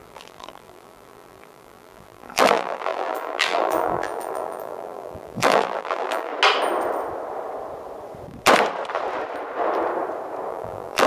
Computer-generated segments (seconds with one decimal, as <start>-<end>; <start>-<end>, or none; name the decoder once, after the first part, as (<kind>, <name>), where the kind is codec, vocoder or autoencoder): 0.0-6.3 (vocoder, BigVGAN v2); 10.5-11.1